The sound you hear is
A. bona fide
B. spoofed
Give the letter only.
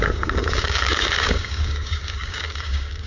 B